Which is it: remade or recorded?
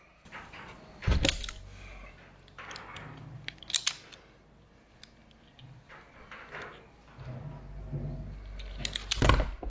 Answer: recorded